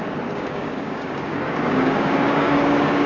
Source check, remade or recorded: remade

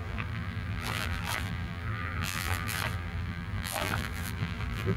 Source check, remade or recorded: remade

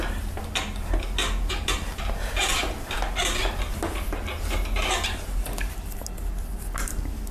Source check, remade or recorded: recorded